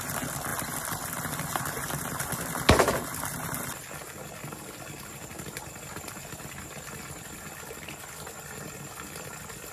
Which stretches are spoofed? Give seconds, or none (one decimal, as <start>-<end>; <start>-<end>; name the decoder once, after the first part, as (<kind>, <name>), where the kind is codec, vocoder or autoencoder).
none